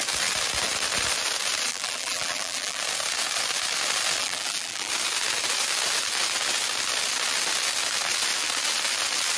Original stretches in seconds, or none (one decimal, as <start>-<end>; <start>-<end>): 0.0-1.7; 2.8-4.2; 4.9-9.4